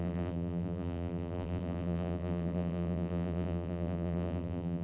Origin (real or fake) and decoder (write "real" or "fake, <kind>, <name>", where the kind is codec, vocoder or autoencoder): fake, vocoder, BigVGAN v2